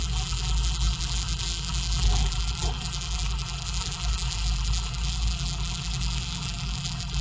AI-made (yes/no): yes